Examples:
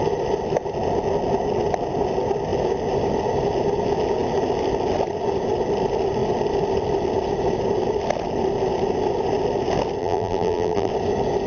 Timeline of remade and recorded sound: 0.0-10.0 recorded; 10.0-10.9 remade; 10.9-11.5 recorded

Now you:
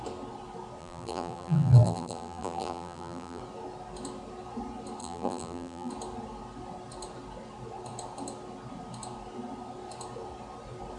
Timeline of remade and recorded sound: 0.0-0.8 recorded; 0.8-3.4 remade; 3.4-5.0 recorded; 5.0-5.9 remade; 5.9-11.0 recorded

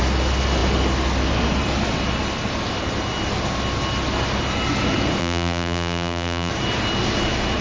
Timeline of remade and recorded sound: 0.0-5.2 recorded; 5.2-6.5 remade; 6.5-7.6 recorded

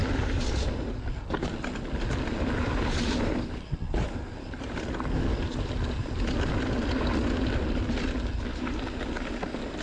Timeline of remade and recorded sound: 0.0-9.8 recorded

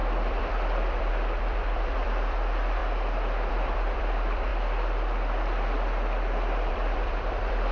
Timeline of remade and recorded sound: 0.0-2.8 remade; 2.8-3.5 recorded; 3.5-4.5 remade; 4.5-6.7 recorded; 6.7-7.7 remade

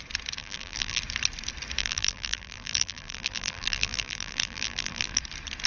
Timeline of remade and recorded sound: 0.0-0.4 recorded; 0.4-1.0 remade; 1.0-1.8 recorded; 1.8-5.2 remade; 5.2-5.7 recorded